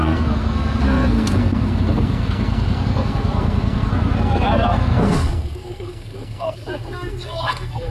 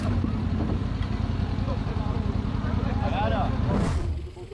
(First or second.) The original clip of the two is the second